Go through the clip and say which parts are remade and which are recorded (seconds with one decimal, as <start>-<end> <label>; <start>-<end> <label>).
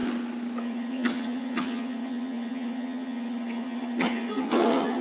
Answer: 0.0-0.6 recorded; 0.6-5.0 remade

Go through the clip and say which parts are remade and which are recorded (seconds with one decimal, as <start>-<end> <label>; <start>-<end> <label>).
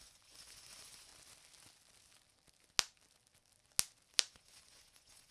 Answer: 0.0-1.1 remade; 1.1-4.3 recorded; 4.3-5.3 remade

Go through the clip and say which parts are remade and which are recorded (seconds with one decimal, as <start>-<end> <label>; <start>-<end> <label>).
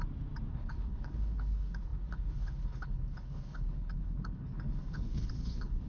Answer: 0.0-0.5 recorded; 0.5-5.9 remade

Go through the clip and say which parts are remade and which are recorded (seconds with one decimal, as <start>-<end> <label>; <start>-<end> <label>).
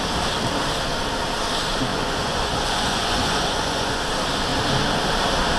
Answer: 0.0-1.9 recorded; 1.9-4.0 remade; 4.0-5.6 recorded